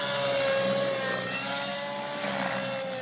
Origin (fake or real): real